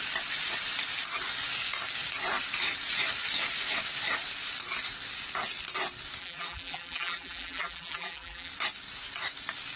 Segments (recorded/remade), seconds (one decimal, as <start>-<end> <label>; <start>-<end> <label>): 0.0-6.2 recorded; 6.2-8.5 remade; 8.5-9.8 recorded